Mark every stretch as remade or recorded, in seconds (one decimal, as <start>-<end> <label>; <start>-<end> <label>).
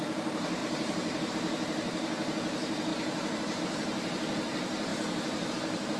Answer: 0.0-6.0 remade